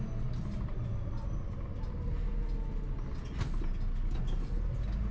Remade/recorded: recorded